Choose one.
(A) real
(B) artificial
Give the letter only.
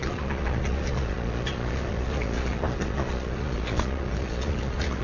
B